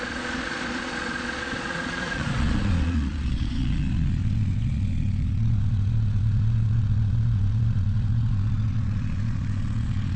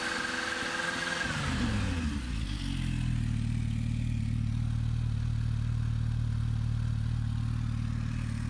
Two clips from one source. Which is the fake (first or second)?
first